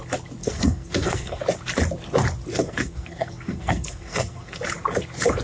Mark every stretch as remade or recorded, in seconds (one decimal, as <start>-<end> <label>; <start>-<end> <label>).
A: 0.0-0.4 recorded; 0.4-1.4 remade; 1.4-2.5 recorded; 2.5-4.6 remade; 4.6-5.4 recorded